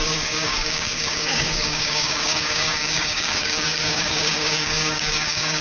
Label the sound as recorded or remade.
remade